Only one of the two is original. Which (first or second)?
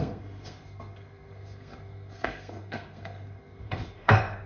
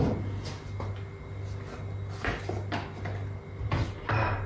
second